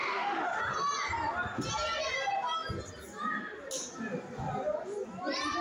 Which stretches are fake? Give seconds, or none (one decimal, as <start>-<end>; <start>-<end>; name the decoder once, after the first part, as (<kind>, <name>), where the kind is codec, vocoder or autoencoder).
0.0-0.6 (autoencoder, DAC-VAE)